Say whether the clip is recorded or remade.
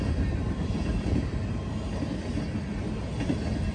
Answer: recorded